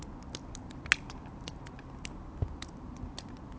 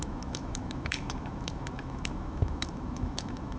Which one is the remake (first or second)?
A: second